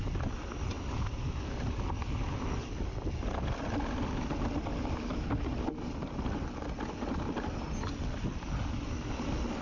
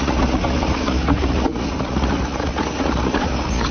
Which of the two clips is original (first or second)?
first